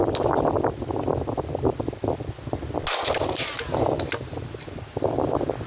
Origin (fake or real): real